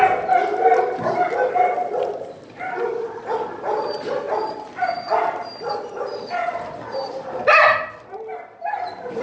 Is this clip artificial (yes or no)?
no